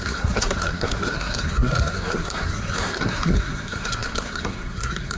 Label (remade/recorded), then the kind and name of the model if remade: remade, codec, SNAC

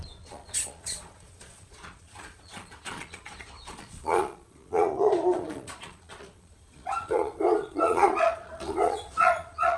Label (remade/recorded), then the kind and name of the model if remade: remade, vocoder, Vocos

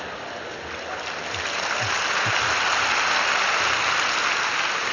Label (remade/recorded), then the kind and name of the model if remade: recorded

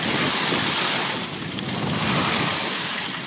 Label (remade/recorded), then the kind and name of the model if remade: recorded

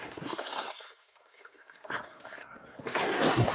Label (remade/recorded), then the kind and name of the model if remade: remade, codec, SNAC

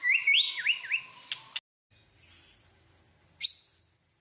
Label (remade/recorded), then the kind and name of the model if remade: recorded